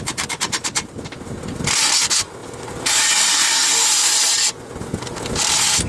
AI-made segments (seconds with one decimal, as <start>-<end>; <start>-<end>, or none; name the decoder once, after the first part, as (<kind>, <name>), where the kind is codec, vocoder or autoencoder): none